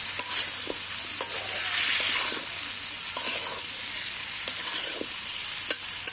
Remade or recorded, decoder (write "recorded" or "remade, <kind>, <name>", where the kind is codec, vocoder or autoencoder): recorded